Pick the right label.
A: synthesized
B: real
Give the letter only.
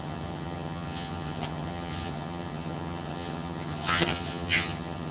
A